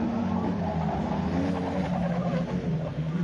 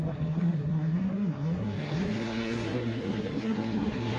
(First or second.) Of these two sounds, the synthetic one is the second